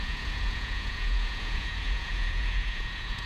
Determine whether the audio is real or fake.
fake